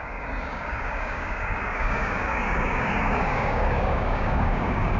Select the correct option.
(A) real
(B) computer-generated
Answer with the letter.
B